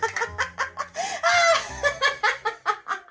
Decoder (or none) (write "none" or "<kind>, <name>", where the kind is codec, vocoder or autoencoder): none